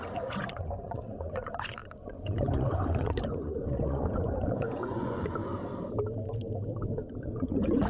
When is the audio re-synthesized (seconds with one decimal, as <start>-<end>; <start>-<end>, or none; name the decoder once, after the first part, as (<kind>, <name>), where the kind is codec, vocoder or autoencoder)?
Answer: 0.0-5.4 (vocoder, Vocos); 7.2-7.9